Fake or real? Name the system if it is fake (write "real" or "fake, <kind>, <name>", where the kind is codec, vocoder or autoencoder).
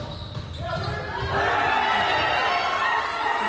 real